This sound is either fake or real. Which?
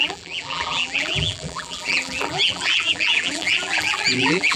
fake